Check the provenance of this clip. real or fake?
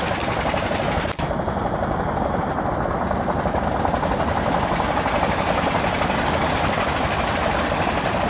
real